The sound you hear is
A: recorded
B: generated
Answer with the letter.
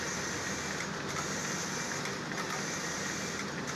A